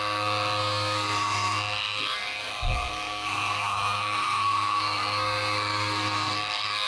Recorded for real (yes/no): no